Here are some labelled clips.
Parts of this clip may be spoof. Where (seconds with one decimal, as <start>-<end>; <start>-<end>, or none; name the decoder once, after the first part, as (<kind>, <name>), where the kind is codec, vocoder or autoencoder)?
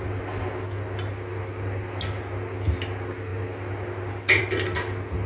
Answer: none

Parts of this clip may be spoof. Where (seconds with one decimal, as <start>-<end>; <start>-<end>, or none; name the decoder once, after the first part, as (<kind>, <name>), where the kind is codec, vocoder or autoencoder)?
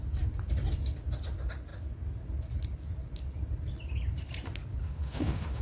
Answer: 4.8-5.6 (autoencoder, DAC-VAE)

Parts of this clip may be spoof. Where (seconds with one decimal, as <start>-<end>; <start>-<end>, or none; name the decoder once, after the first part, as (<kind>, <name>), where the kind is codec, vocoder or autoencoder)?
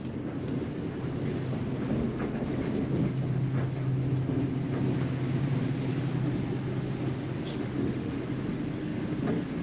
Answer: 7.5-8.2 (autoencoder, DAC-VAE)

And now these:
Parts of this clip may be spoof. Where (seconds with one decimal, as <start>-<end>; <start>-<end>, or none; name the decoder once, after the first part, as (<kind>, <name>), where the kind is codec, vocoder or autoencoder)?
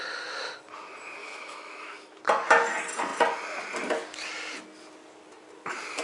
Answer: 1.2-2.2 (autoencoder, DAC-VAE)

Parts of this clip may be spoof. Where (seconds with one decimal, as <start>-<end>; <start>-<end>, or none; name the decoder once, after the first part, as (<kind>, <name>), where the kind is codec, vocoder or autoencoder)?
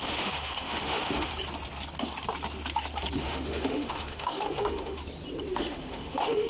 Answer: 0.0-1.3 (autoencoder, DAC-VAE); 3.2-5.0; 5.5-6.5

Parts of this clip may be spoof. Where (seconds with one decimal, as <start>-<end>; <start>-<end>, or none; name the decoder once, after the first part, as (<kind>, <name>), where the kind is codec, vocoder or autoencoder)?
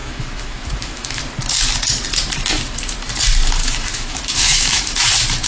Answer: 0.0-1.2 (autoencoder, DAC-VAE); 3.6-5.1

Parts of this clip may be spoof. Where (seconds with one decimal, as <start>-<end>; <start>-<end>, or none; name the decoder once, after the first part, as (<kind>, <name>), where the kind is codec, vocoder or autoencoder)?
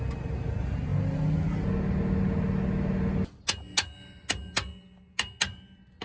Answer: none